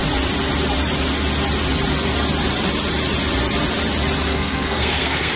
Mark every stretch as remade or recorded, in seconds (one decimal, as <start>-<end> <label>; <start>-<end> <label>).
0.0-4.3 recorded; 4.3-5.4 remade

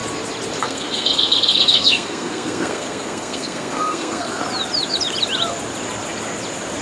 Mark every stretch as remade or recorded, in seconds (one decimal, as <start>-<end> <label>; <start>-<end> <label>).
0.0-0.6 recorded; 0.6-4.4 remade; 4.4-6.8 recorded

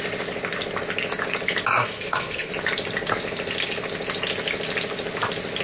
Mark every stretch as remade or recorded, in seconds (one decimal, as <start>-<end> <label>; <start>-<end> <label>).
0.0-1.8 recorded; 1.8-2.5 remade; 2.5-5.6 recorded

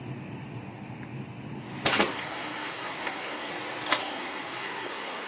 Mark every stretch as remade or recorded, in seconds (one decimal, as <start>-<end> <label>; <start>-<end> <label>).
0.0-2.1 recorded; 2.1-3.5 remade; 3.5-4.0 recorded; 4.0-5.3 remade

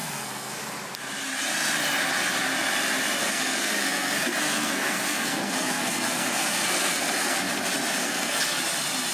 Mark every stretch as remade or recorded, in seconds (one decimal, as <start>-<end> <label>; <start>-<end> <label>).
0.0-0.6 remade; 0.6-3.2 recorded; 3.2-7.5 remade; 7.5-8.0 recorded; 8.0-8.6 remade; 8.6-9.1 recorded

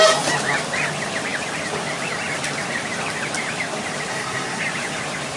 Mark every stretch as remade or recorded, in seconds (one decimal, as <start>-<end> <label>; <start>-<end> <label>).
0.0-4.1 recorded; 4.1-4.6 remade; 4.6-5.4 recorded

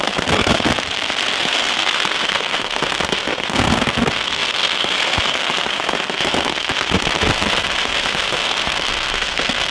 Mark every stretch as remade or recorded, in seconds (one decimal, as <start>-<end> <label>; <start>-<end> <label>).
0.0-0.7 remade; 0.7-1.4 recorded; 1.4-9.7 remade